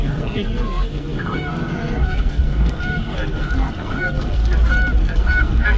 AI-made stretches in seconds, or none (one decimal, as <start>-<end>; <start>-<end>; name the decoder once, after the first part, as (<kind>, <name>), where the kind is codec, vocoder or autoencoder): 0.0-4.4 (codec, SNAC); 5.0-5.8